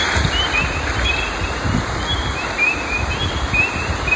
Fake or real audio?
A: real